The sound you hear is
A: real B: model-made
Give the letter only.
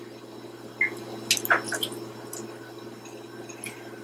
A